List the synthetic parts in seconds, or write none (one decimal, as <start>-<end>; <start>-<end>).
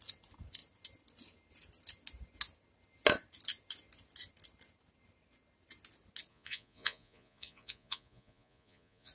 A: 6.3-9.1